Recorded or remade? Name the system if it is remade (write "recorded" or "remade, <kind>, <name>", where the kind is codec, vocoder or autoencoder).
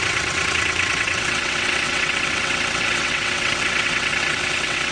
remade, vocoder, WaveNeXt